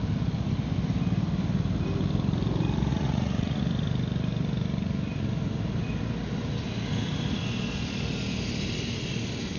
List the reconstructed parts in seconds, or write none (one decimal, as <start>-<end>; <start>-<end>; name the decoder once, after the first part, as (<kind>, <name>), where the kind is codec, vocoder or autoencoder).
2.9-3.6 (vocoder, Vocos)